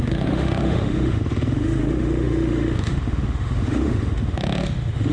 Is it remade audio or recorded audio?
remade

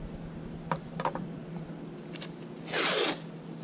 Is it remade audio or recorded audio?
recorded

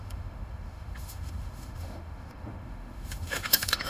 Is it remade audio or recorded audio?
remade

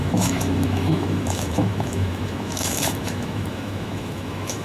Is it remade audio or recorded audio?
remade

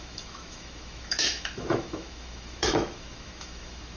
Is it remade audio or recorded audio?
remade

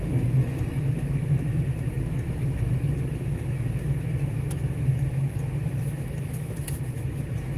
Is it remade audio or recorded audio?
remade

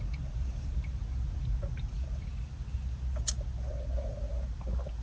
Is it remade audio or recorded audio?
recorded